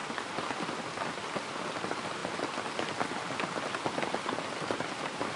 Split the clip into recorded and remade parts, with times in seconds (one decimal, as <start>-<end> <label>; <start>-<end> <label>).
0.0-5.4 recorded